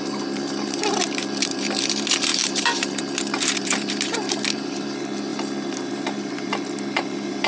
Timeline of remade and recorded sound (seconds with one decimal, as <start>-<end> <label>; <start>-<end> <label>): 0.0-7.5 remade